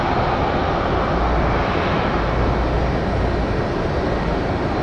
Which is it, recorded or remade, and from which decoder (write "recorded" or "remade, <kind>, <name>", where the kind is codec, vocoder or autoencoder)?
recorded